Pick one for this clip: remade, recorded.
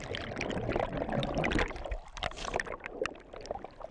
recorded